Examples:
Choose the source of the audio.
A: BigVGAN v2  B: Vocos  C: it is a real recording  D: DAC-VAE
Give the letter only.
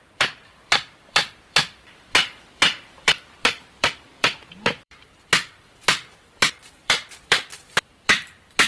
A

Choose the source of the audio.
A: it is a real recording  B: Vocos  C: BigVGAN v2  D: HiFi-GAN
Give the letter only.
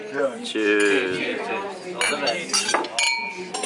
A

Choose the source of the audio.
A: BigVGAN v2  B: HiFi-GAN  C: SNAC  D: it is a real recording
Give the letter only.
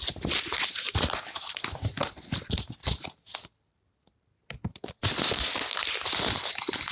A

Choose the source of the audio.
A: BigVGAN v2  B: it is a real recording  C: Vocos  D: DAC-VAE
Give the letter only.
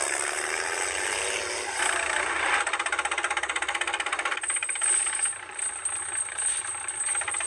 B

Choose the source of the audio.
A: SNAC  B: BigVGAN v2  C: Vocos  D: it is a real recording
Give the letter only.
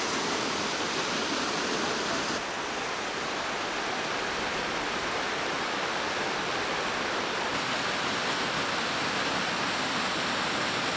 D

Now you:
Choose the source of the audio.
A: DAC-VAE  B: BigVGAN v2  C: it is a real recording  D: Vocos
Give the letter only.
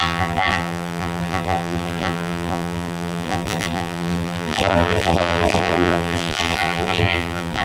B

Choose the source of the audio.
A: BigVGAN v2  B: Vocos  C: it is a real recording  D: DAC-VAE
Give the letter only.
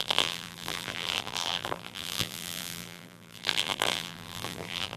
A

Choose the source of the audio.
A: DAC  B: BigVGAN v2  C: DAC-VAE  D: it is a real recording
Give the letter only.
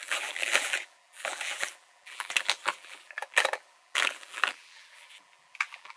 B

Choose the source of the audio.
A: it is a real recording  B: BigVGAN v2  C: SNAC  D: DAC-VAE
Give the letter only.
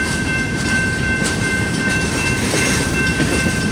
B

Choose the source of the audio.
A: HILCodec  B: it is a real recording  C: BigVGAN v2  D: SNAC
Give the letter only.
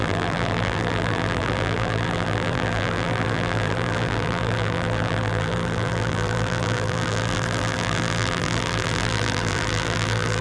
C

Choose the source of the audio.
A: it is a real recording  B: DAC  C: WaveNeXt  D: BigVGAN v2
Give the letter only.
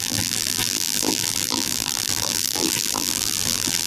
D